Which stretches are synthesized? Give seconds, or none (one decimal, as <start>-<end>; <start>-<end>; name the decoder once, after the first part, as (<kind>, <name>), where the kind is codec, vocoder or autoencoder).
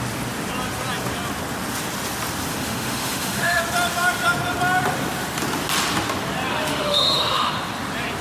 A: 2.5-3.6 (autoencoder, DAC-VAE); 6.7-7.5